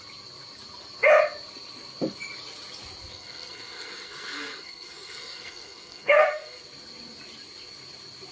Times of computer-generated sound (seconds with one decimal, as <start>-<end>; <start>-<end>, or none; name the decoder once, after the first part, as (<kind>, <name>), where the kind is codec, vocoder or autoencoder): 3.1-6.6 (codec, SNAC)